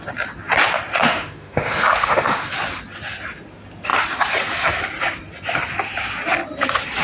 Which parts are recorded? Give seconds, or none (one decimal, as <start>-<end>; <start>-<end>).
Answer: 0.0-1.0; 2.5-7.0

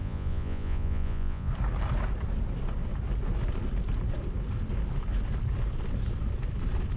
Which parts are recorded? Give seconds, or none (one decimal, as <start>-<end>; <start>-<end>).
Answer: 1.5-7.0

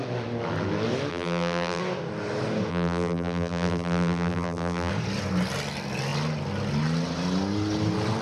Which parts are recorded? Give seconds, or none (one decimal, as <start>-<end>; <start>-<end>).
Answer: 0.0-1.1; 1.8-2.7; 4.9-8.2

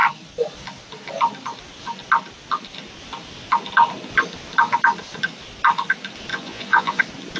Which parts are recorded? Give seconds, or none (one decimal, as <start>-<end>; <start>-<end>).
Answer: 0.0-6.3; 7.0-7.4

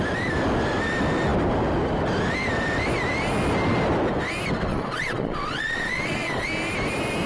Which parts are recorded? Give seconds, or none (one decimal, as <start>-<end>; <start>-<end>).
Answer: 0.0-4.7; 6.5-7.3

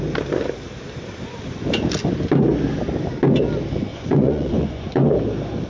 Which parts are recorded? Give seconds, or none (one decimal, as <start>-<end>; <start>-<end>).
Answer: 0.0-3.9; 5.1-5.7

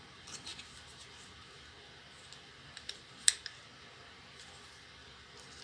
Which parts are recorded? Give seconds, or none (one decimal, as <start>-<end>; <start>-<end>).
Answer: 0.0-5.6

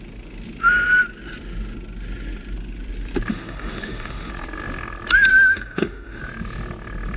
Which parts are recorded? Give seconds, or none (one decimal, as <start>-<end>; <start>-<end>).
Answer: 0.0-3.3; 4.3-5.3; 6.2-7.2